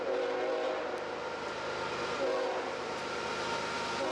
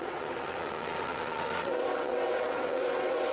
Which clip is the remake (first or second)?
second